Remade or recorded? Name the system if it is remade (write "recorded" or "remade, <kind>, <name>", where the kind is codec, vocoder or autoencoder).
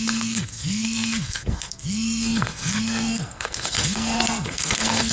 remade, codec, SNAC